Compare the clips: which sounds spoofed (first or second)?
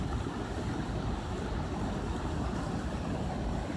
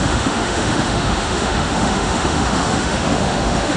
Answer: second